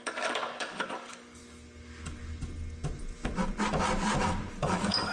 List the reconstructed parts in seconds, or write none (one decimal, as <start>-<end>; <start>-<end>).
0.0-1.4; 4.5-5.1